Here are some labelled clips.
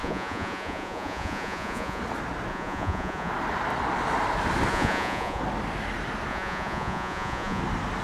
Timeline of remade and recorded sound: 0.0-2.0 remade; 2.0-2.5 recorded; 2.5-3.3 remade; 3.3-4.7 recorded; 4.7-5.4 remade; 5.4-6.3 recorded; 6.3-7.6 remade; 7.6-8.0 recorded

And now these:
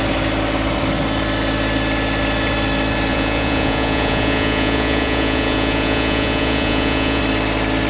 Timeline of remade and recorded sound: 0.0-3.1 recorded; 3.1-7.2 remade; 7.2-7.9 recorded

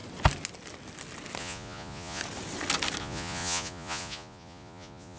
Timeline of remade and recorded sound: 0.0-1.4 recorded; 1.4-2.2 remade; 2.2-3.0 recorded; 3.0-5.2 remade

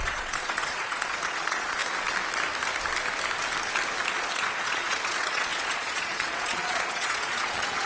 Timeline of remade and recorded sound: 0.0-1.8 remade; 1.8-4.1 recorded; 4.1-7.9 remade

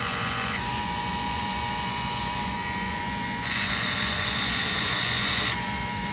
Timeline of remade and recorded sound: 0.0-6.1 remade

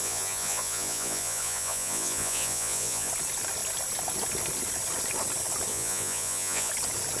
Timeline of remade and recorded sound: 0.0-3.1 remade; 3.1-5.7 recorded; 5.7-6.7 remade; 6.7-7.2 recorded

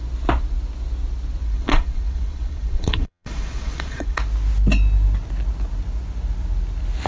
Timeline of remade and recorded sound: 0.0-1.4 recorded; 1.4-4.2 remade; 4.2-7.1 recorded